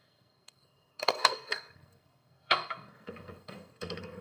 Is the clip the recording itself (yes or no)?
no